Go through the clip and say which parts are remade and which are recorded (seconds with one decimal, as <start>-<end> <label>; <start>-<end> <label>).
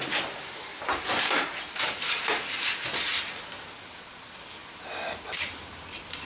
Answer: 0.0-0.7 recorded; 0.7-3.7 remade; 3.7-6.3 recorded